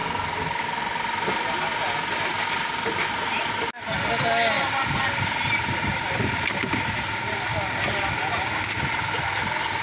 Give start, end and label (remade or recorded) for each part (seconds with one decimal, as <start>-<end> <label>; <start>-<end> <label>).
0.0-9.8 recorded